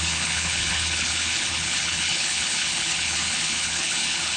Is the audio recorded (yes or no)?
no